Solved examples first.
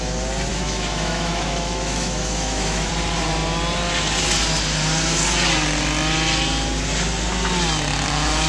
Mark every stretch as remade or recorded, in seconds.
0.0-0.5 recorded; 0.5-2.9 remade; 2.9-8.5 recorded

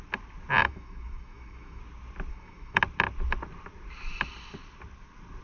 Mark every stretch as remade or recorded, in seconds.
0.0-0.6 recorded; 0.6-1.8 remade; 1.8-2.3 recorded; 2.3-2.8 remade; 2.8-5.4 recorded

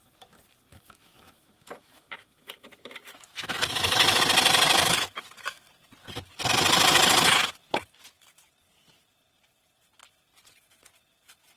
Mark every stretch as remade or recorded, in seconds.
0.0-0.7 recorded; 0.7-4.2 remade; 4.2-11.6 recorded

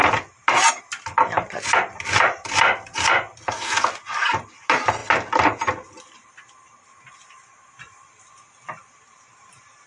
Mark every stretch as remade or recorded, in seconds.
0.0-9.9 recorded

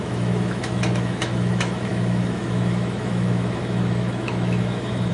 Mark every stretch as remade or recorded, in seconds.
0.0-5.1 remade

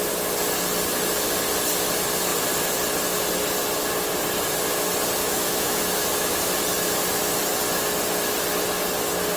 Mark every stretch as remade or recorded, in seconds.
0.0-5.2 recorded; 5.2-6.5 remade; 6.5-9.4 recorded

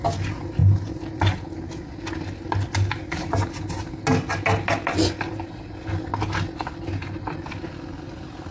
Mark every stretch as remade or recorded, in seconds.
0.0-8.5 recorded

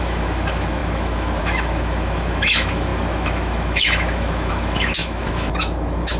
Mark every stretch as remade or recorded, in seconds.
0.0-6.2 remade